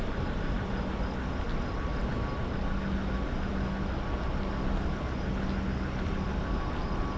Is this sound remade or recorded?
recorded